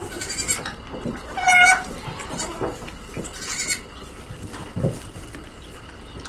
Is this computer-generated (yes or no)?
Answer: no